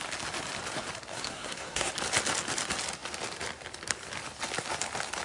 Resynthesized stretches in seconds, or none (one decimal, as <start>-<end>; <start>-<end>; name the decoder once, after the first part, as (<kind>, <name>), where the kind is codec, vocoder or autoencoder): 1.1-1.9 (codec, SNAC)